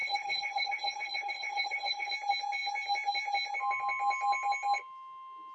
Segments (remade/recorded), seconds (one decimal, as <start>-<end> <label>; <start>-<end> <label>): 0.0-2.1 remade; 2.1-5.5 recorded